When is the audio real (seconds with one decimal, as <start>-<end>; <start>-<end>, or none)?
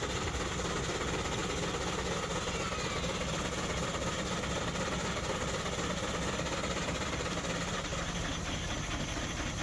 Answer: 0.0-9.6